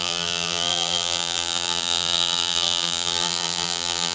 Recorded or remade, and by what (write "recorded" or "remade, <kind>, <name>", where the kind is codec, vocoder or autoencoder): remade, vocoder, BigVGAN v2